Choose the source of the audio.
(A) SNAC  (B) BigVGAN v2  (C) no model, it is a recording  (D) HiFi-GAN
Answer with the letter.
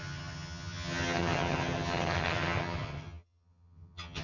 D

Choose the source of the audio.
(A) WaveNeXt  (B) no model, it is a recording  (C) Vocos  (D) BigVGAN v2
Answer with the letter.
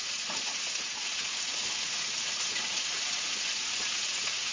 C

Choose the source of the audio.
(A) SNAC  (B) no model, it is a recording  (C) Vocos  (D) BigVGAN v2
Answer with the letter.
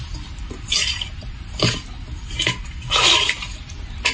B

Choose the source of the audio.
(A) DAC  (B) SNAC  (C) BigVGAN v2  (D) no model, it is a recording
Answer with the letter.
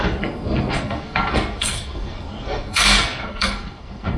B